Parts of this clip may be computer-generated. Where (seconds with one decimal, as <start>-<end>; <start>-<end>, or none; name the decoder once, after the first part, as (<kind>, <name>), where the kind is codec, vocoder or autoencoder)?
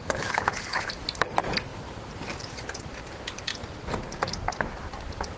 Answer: 0.0-0.9 (codec, HILCodec)